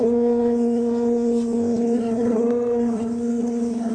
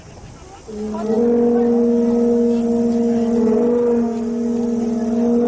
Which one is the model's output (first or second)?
first